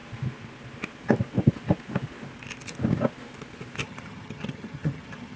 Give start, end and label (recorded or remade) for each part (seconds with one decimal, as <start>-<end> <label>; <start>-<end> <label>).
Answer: 0.0-3.8 recorded; 3.8-5.4 remade